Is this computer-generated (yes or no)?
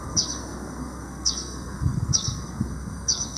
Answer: yes